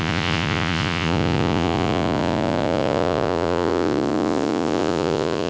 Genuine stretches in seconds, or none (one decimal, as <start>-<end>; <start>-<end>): none